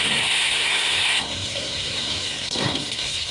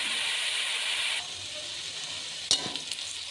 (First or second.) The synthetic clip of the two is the first